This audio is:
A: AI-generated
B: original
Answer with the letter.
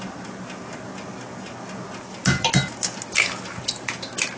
B